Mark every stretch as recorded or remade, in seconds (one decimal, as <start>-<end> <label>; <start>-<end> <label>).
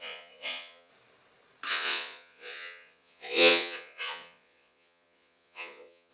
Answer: 0.0-0.9 remade; 0.9-1.7 recorded; 1.7-6.1 remade